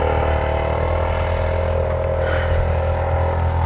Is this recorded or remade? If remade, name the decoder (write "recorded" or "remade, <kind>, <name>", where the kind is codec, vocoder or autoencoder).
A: recorded